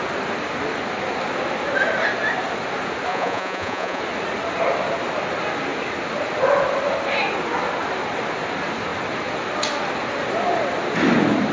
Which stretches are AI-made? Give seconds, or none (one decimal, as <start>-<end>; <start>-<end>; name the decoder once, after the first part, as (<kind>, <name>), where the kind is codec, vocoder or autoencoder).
3.1-4.0 (vocoder, Vocos)